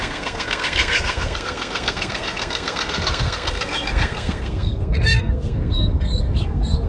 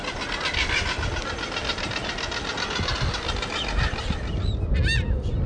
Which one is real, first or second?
second